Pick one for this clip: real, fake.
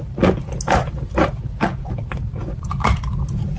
real